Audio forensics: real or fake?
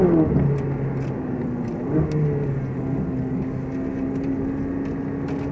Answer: real